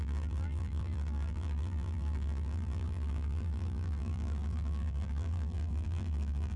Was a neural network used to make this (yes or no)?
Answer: yes